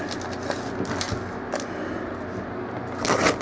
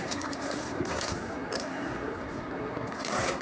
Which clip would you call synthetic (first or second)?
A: second